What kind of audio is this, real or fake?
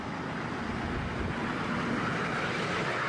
real